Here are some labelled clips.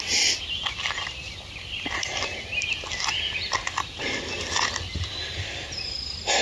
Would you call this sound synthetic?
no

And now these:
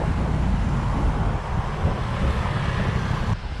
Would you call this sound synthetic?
no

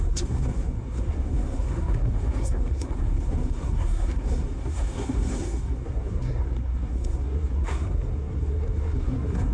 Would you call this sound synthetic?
yes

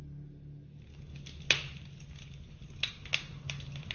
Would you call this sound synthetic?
no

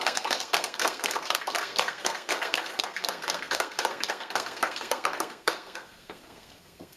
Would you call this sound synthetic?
yes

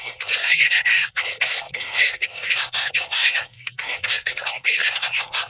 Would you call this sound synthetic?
yes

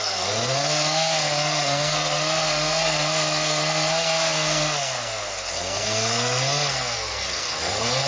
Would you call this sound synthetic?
yes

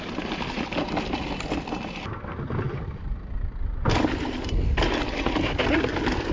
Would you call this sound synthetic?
no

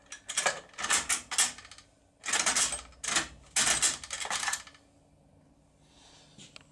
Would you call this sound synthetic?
no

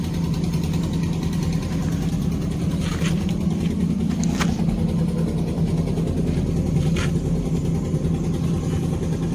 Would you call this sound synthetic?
no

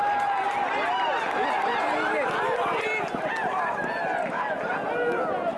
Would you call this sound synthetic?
no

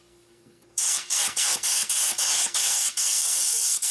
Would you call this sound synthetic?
yes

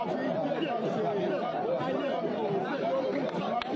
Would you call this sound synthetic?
no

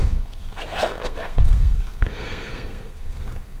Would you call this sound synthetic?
yes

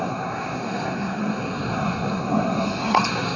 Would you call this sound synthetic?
yes